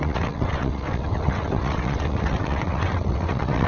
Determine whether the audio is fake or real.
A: fake